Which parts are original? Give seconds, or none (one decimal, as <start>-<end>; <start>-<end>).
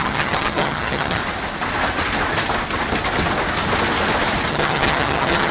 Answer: 1.2-4.5